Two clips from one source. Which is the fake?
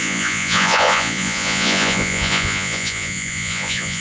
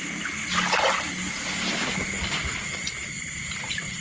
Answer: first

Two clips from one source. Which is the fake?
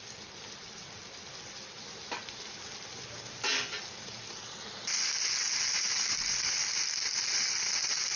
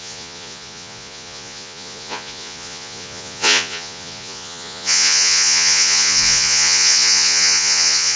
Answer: second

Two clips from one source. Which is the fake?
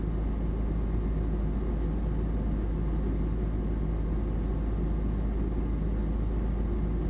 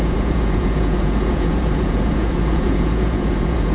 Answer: second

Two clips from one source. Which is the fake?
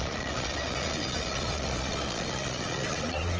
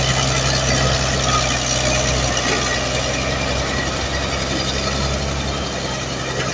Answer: first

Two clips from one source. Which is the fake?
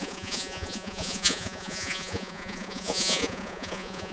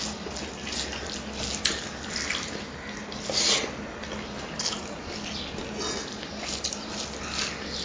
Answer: first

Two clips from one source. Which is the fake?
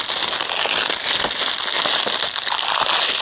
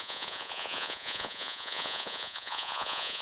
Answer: second